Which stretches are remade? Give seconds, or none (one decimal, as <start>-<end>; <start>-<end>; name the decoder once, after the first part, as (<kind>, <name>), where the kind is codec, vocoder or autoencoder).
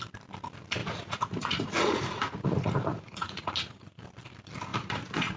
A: 0.8-4.0 (vocoder, Vocos); 4.7-5.4